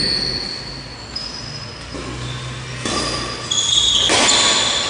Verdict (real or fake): real